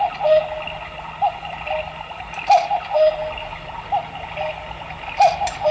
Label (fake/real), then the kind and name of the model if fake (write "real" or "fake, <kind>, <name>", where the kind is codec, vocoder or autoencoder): real